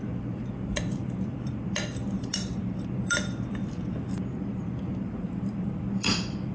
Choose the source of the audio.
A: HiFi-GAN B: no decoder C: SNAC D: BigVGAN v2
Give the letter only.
D